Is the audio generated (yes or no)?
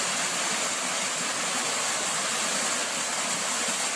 no